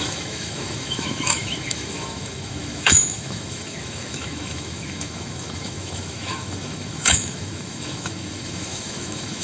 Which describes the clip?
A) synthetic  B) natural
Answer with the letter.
A